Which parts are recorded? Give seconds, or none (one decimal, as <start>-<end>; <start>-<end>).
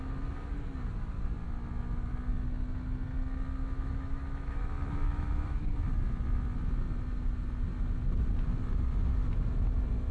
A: 0.0-3.6; 5.7-10.1